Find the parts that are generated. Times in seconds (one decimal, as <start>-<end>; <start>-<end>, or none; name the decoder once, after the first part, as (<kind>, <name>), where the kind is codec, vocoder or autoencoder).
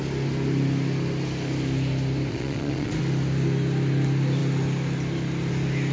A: 2.3-3.0 (vocoder, Vocos)